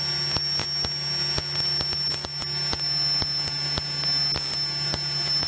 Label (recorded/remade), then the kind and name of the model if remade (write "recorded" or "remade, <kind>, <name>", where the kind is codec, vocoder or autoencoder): recorded